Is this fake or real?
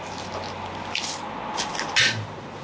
real